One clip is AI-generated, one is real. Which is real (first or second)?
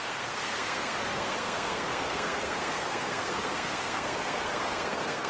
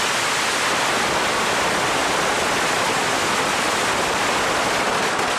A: second